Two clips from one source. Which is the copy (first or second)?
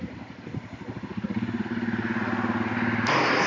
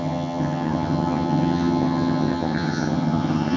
second